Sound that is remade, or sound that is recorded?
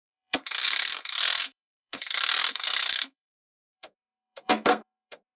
remade